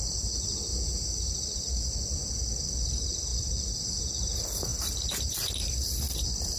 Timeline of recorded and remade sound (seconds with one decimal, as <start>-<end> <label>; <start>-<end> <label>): 0.0-0.7 remade; 0.7-2.3 recorded; 2.3-6.6 remade